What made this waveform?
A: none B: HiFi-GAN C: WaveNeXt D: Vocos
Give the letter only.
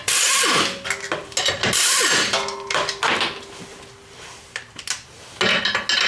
A